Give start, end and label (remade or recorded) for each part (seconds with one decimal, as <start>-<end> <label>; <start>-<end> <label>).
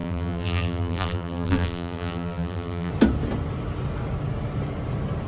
0.0-2.9 remade; 2.9-5.3 recorded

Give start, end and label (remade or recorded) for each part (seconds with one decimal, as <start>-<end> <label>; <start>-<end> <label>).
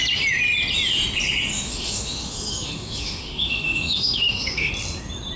0.0-1.5 recorded; 1.5-4.7 remade; 4.7-5.4 recorded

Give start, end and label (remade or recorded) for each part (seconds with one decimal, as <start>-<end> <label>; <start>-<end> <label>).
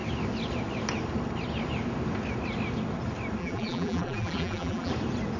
0.0-3.4 recorded; 3.4-4.9 remade; 4.9-5.4 recorded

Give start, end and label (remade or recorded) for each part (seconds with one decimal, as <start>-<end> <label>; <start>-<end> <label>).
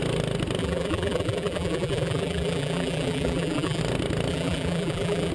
0.0-0.6 recorded; 0.6-3.8 remade; 3.8-4.3 recorded; 4.3-5.3 remade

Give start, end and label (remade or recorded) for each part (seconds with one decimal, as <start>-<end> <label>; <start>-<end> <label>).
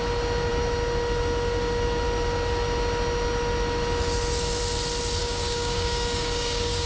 0.0-5.2 recorded; 5.2-6.9 remade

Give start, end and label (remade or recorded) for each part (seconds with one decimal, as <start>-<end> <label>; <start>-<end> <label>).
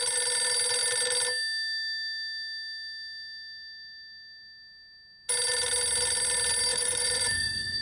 0.0-6.7 recorded; 6.7-7.8 remade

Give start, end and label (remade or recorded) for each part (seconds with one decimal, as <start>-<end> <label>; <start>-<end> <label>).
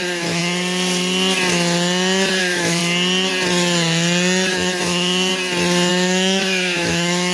0.0-0.4 remade; 0.4-2.4 recorded; 2.4-2.8 remade; 2.8-4.5 recorded; 4.5-5.3 remade; 5.3-5.9 recorded; 5.9-7.3 remade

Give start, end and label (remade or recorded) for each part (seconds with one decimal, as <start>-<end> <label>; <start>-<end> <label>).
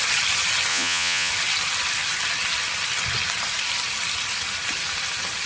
0.0-0.7 recorded; 0.7-1.3 remade; 1.3-5.5 recorded